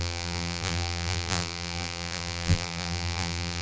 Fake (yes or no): yes